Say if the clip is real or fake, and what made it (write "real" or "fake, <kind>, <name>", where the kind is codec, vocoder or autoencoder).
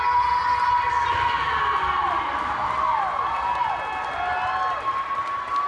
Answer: real